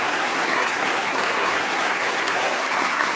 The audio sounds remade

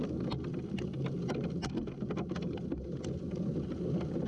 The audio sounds recorded